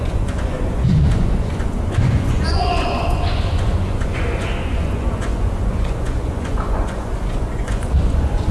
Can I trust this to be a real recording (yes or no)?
no